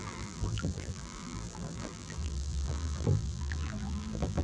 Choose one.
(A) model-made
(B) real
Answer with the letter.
A